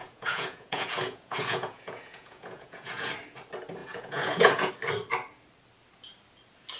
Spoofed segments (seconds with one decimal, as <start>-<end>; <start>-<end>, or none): 0.0-3.1; 3.8-4.7